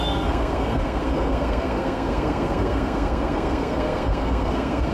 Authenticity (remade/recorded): remade